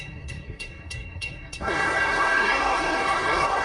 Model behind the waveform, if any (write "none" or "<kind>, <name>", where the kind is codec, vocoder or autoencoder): codec, SNAC